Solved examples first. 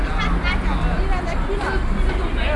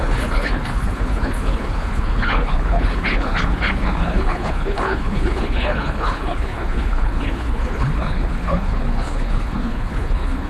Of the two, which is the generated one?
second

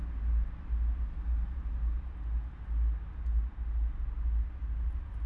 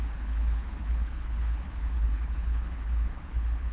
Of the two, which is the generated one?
second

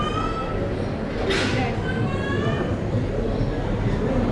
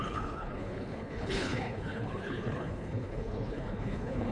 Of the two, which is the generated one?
second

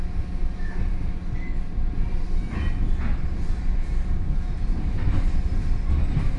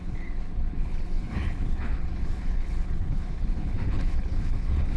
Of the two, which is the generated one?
second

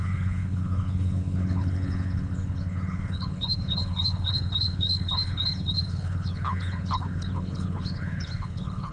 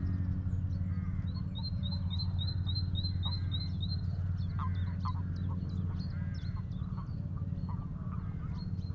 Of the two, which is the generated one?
first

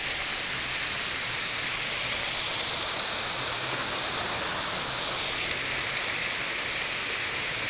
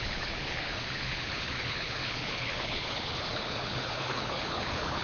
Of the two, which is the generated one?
second